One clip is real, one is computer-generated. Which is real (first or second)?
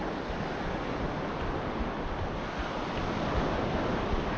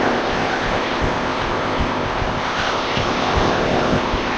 first